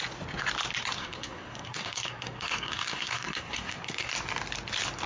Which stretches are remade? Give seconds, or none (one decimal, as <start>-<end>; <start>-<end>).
1.0-4.1